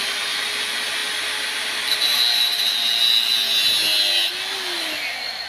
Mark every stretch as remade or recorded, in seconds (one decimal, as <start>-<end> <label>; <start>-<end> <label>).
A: 0.0-5.5 recorded